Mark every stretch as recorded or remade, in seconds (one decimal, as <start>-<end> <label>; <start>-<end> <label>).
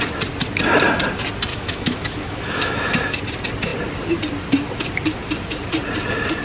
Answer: 0.0-1.5 recorded; 1.5-3.2 remade; 3.2-6.4 recorded